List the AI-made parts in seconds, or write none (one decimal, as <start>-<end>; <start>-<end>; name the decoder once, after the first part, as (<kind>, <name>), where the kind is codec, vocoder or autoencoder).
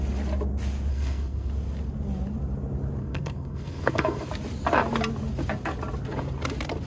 0.9-1.5 (codec, SNAC); 3.0-4.3